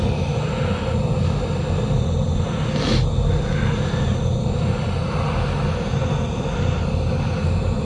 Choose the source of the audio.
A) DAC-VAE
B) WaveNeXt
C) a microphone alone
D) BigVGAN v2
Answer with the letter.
C